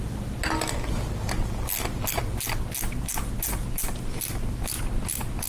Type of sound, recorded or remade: recorded